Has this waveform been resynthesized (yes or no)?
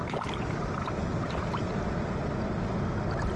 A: no